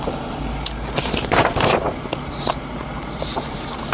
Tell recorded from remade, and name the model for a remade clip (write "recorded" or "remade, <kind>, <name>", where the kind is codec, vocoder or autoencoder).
recorded